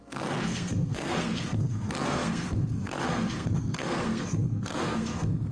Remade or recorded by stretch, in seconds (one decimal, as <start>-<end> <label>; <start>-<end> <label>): 0.0-5.5 remade